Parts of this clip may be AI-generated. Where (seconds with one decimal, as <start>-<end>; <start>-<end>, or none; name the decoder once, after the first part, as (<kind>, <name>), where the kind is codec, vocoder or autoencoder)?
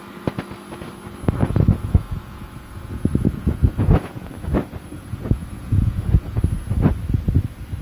1.4-4.3 (vocoder, Vocos); 4.9-6.4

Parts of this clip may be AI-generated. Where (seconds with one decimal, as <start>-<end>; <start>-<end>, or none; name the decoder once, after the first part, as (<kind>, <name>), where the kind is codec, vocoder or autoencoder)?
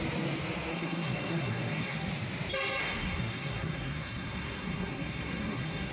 0.7-2.1 (codec, SNAC); 2.8-5.9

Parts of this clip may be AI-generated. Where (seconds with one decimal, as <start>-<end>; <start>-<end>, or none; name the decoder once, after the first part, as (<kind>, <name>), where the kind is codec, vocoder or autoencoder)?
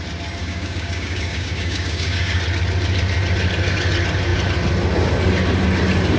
0.4-2.4 (codec, DAC)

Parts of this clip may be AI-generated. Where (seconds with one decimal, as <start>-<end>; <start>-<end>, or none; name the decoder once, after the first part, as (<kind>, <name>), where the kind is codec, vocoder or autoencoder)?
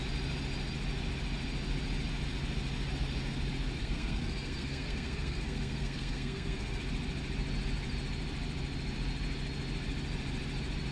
3.8-6.8 (codec, SNAC)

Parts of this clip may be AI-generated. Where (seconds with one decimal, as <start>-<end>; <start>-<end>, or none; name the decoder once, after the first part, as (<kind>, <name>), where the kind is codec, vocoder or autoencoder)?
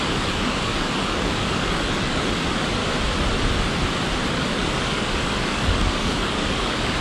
0.0-2.8 (codec, DAC); 4.3-7.0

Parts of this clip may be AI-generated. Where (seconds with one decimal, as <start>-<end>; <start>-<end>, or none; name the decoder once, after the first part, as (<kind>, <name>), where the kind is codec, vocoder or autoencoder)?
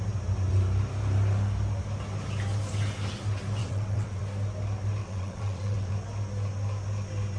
3.6-4.2 (vocoder, WaveNeXt); 5.0-5.9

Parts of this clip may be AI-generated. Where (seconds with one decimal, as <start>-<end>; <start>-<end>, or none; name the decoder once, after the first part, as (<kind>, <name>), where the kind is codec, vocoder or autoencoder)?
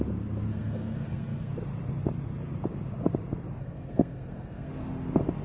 0.5-1.5 (codec, SNAC); 3.6-4.7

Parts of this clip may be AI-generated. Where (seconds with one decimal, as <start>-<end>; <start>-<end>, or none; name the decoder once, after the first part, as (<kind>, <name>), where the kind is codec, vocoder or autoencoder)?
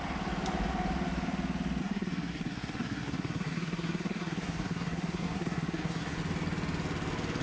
1.8-6.2 (codec, SNAC)